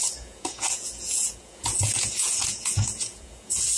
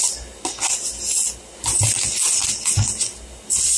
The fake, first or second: first